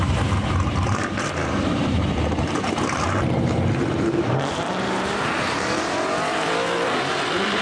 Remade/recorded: remade